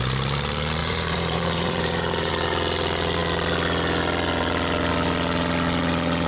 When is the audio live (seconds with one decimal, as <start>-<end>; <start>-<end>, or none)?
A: 0.0-0.8; 2.3-6.3